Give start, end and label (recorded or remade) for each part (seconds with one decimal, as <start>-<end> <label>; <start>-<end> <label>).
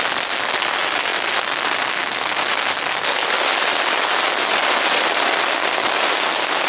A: 0.0-6.7 recorded